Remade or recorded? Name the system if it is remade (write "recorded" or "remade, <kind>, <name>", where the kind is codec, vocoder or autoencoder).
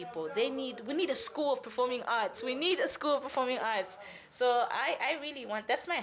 recorded